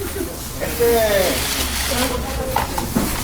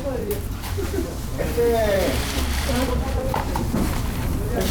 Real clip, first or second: first